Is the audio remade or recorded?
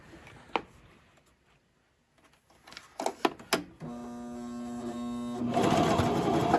recorded